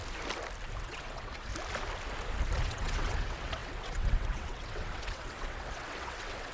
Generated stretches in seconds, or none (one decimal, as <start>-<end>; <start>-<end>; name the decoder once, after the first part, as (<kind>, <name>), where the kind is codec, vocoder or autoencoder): 0.8-1.5 (vocoder, WaveNeXt); 2.6-6.5